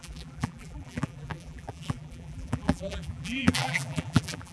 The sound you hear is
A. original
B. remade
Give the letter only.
B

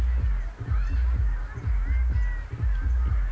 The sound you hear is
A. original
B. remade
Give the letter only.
A